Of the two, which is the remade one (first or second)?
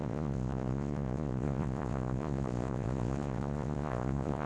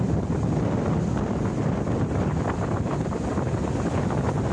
first